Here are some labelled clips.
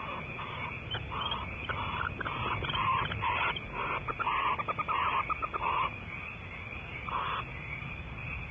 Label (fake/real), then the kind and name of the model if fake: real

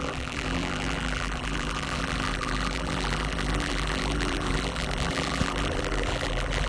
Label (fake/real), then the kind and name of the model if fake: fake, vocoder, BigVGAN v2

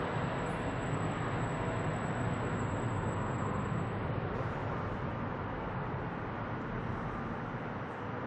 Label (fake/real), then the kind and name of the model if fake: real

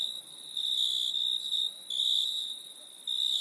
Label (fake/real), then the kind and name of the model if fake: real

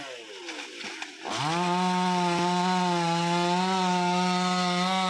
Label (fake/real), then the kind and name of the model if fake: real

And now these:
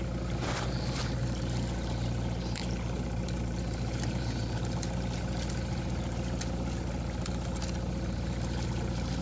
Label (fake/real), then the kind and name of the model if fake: real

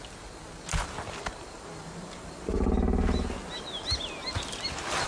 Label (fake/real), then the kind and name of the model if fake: real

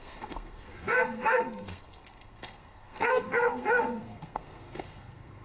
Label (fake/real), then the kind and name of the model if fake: fake, codec, SNAC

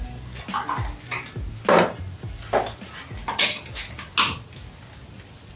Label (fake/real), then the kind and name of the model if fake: real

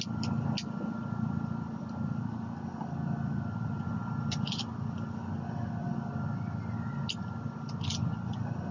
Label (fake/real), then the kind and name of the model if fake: real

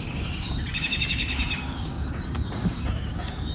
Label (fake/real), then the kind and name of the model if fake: fake, codec, DAC